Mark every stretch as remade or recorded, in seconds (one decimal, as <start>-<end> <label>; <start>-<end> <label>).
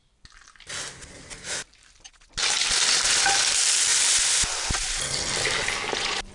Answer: 0.0-6.3 recorded